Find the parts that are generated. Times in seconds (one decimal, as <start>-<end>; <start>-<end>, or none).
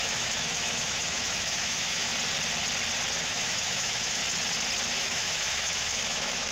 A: 0.0-2.1; 3.2-4.2; 5.0-6.5